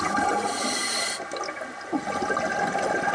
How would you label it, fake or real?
real